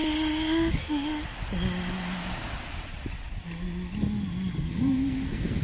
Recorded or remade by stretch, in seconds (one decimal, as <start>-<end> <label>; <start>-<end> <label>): 0.0-4.6 recorded; 4.6-5.6 remade